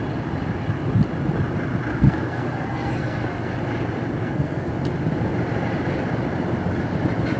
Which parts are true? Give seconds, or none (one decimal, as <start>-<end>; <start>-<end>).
0.0-1.9; 3.5-4.2; 4.7-7.4